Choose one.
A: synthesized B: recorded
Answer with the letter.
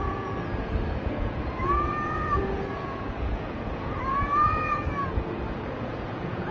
A